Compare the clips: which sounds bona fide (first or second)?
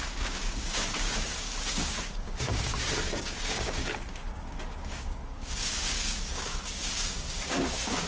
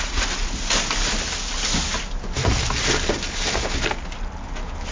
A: second